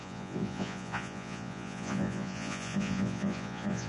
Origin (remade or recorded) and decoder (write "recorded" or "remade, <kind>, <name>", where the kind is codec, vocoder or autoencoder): remade, vocoder, Vocos